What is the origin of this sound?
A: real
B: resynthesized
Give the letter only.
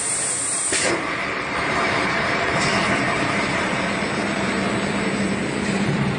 B